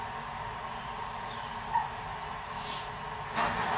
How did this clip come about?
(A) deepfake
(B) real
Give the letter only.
B